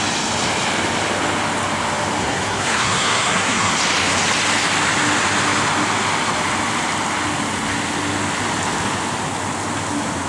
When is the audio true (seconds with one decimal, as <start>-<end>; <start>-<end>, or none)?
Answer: 0.0-2.2; 3.7-10.3